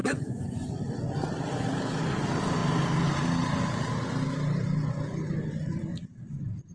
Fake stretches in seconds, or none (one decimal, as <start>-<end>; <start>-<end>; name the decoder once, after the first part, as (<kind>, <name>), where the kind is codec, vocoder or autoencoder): 0.0-0.7 (vocoder, Vocos)